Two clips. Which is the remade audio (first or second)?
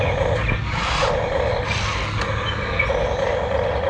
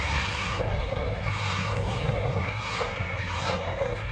second